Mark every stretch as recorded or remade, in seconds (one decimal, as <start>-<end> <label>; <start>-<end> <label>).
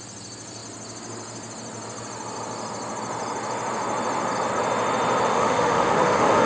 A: 0.0-5.3 recorded; 5.3-6.5 remade